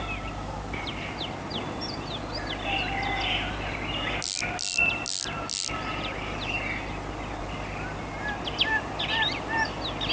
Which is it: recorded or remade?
recorded